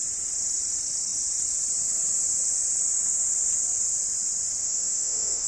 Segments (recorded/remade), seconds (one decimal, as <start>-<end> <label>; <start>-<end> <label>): 0.0-4.6 recorded; 4.6-5.5 remade